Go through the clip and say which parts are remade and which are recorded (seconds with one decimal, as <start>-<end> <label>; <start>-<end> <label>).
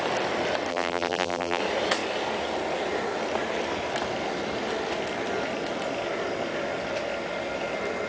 0.0-0.7 recorded; 0.7-1.6 remade; 1.6-8.1 recorded